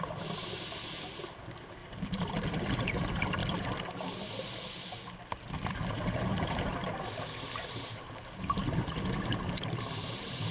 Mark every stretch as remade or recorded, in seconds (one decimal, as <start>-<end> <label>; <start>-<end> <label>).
0.0-3.4 remade; 3.4-5.7 recorded; 5.7-6.8 remade; 6.8-7.7 recorded; 7.7-10.5 remade